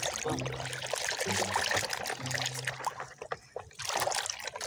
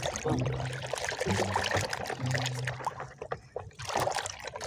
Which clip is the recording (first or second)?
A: first